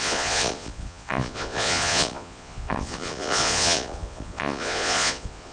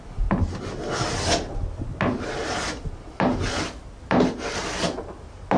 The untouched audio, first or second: second